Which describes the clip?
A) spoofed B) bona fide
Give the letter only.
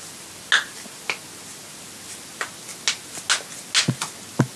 B